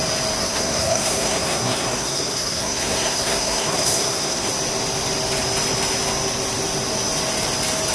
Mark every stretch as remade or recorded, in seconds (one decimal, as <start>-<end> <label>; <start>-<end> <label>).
0.0-0.4 recorded; 0.4-4.5 remade; 4.5-7.9 recorded